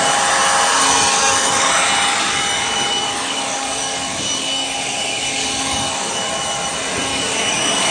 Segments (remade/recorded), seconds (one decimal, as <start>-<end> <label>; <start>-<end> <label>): 0.0-1.1 recorded; 1.1-1.7 remade; 1.7-2.1 recorded; 2.1-6.3 remade; 6.3-7.1 recorded; 7.1-7.9 remade